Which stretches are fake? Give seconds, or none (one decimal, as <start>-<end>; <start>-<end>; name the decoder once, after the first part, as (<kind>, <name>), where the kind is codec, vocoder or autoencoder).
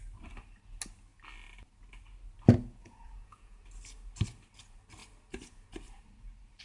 2.8-3.6 (vocoder, Vocos)